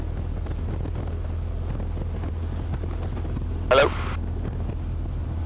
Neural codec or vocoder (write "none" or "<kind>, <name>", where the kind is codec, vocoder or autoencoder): none